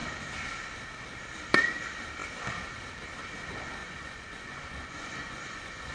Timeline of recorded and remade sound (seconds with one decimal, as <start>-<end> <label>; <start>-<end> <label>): 0.0-3.8 recorded; 3.8-5.9 remade